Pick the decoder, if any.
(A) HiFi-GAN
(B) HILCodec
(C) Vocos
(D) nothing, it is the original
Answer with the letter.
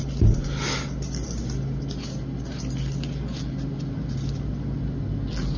D